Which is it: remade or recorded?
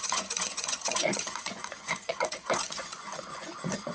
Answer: remade